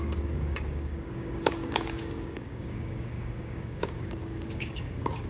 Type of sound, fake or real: fake